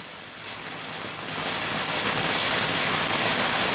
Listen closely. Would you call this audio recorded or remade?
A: recorded